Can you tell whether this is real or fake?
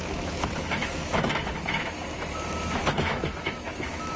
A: fake